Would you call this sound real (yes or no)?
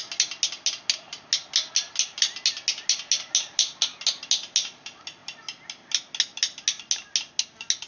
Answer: yes